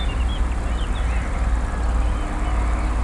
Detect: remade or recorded recorded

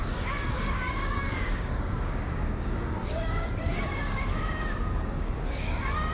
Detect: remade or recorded remade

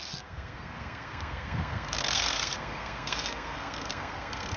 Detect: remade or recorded remade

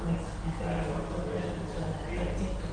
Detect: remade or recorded recorded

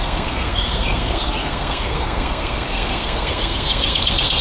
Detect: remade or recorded remade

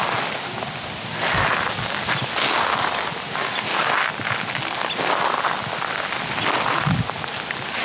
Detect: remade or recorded recorded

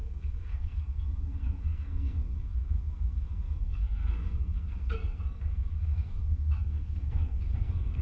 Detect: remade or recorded remade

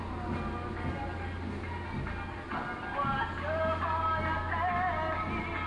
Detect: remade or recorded recorded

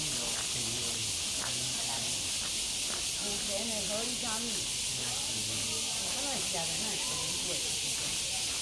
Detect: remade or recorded recorded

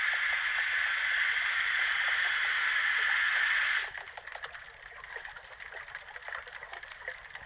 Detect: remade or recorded recorded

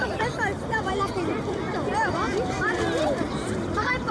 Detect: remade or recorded remade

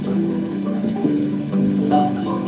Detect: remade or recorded remade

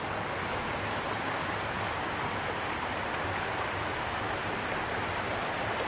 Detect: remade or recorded recorded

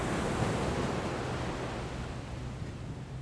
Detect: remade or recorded recorded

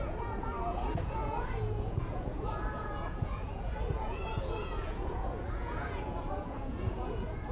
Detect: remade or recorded remade